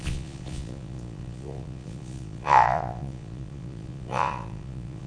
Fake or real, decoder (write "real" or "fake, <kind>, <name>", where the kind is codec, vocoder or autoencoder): fake, vocoder, Vocos